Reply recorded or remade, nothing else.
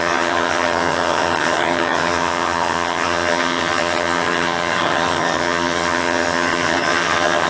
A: remade